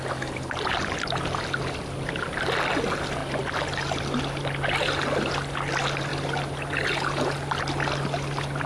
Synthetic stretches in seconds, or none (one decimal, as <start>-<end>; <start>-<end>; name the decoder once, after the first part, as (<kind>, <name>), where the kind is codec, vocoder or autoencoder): none